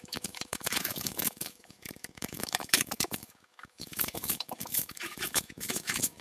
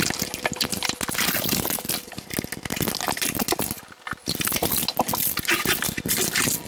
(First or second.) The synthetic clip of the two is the first